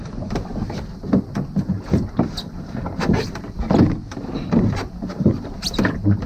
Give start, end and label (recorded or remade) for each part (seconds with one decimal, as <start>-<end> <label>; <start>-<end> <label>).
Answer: 0.0-6.3 recorded